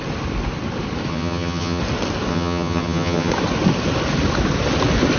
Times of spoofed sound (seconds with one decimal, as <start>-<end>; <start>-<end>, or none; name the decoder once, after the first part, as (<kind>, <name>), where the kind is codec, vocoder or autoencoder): 1.1-1.8 (vocoder, HiFi-GAN); 2.3-3.3

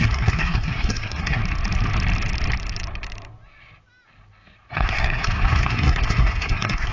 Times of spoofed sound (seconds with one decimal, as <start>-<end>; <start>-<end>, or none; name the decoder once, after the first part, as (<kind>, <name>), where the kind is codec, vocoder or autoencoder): 0.0-1.4 (codec, SNAC); 4.7-6.9

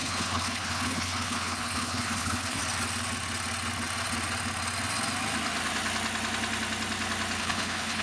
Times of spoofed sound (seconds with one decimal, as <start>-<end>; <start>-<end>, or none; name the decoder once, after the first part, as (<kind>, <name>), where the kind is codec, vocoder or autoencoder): 0.0-2.6 (codec, HILCodec); 7.4-8.0